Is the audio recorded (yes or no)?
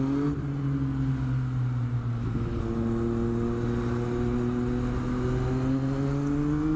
yes